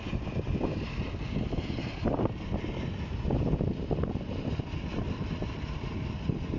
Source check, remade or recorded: recorded